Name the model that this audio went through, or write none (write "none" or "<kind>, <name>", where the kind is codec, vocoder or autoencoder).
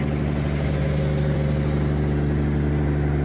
none